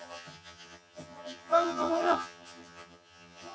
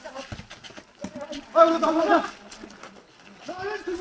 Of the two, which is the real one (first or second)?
second